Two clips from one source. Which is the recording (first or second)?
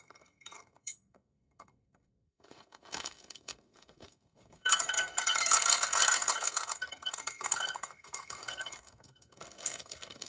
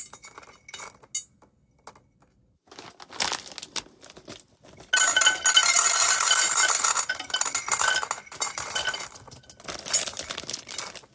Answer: second